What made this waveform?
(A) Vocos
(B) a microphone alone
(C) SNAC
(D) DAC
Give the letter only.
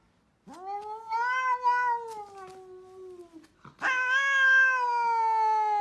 B